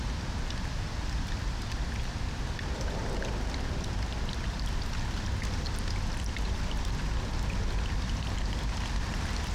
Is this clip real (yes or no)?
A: yes